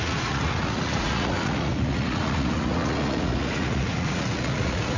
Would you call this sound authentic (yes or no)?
no